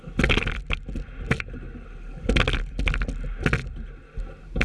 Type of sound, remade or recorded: recorded